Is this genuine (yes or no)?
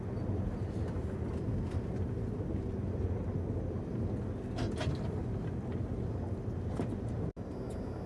yes